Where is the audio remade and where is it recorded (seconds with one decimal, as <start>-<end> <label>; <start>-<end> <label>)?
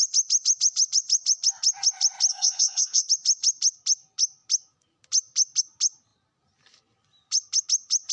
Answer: 0.0-2.3 recorded; 2.3-3.1 remade; 3.1-8.1 recorded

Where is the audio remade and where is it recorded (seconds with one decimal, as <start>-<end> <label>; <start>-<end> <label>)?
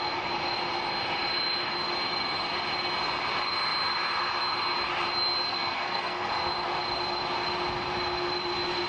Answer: 0.0-5.5 recorded; 5.5-6.3 remade; 6.3-8.9 recorded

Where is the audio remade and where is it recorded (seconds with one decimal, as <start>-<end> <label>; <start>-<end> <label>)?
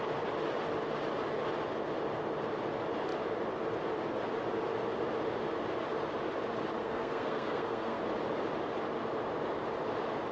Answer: 0.0-6.8 recorded; 6.8-8.0 remade; 8.0-10.3 recorded